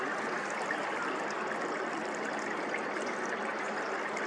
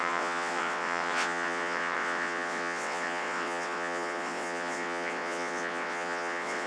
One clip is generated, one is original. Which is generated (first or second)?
second